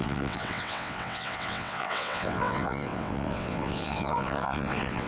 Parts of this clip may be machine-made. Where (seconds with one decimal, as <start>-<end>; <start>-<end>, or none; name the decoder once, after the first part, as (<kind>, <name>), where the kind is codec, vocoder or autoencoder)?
0.0-5.1 (vocoder, WaveNeXt)